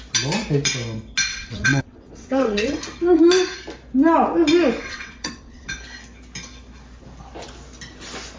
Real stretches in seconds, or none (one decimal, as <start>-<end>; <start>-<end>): 0.0-1.3; 2.8-4.8; 5.7-8.4